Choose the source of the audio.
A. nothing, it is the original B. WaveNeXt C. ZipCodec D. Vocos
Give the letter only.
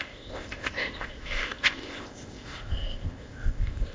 C